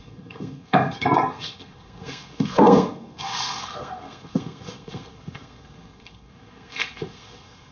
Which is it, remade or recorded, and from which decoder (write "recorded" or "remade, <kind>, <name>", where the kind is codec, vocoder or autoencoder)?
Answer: remade, codec, SNAC